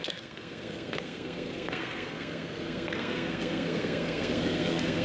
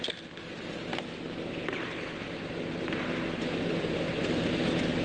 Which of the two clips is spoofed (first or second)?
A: first